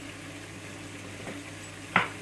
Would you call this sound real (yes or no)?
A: yes